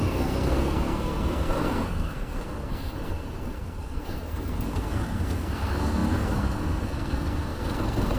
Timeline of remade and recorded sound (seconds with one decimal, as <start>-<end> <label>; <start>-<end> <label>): 0.0-8.2 remade